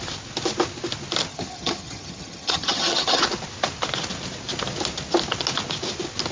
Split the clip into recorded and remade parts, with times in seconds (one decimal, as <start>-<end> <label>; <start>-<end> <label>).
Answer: 0.0-1.3 recorded; 1.3-3.2 remade; 3.2-6.3 recorded